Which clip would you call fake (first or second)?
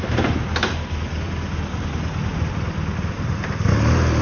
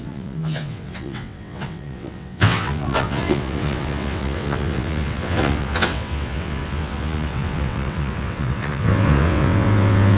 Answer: second